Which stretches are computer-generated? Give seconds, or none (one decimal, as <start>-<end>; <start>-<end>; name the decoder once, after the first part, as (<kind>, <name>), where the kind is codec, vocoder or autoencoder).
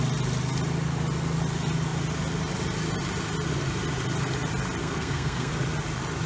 4.8-5.5 (codec, SNAC)